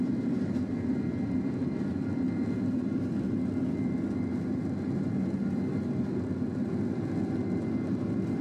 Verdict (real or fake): real